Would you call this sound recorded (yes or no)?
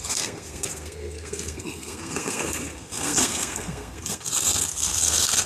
no